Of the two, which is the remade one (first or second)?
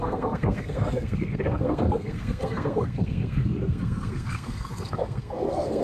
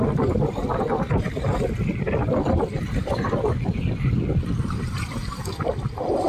first